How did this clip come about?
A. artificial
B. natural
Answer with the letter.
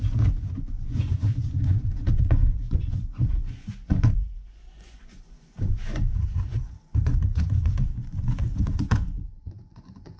A